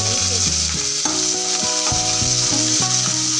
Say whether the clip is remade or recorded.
recorded